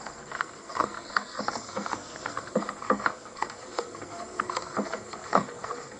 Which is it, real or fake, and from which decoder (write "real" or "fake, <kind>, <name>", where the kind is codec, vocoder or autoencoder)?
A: fake, codec, SNAC